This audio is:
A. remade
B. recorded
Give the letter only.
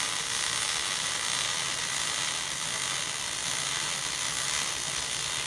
B